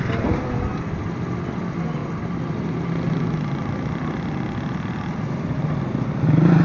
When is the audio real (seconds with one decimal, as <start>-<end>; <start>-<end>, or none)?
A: 0.0-6.6